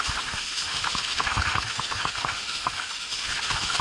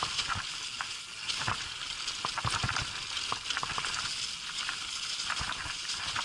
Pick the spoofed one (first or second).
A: first